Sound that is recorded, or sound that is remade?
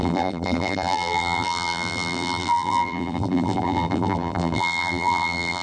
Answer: remade